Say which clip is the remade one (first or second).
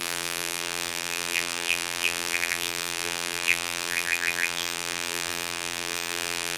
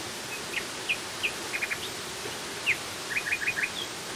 first